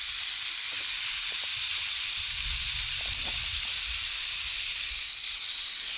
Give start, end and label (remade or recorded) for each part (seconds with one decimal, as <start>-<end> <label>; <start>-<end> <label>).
0.0-1.5 recorded; 1.5-5.1 remade; 5.1-6.0 recorded